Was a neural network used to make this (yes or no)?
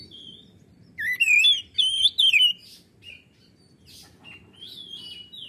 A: no